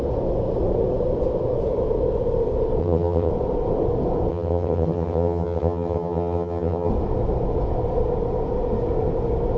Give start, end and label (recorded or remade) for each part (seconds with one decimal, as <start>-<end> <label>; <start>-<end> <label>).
0.0-2.8 recorded; 2.8-3.3 remade; 3.3-4.3 recorded; 4.3-6.9 remade; 6.9-9.6 recorded